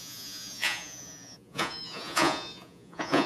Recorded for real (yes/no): no